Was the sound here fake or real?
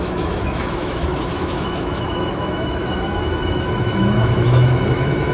fake